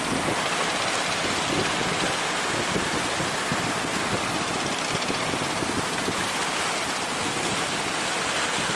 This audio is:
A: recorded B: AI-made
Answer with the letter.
A